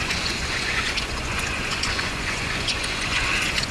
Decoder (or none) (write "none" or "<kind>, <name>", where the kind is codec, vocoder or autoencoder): vocoder, Vocos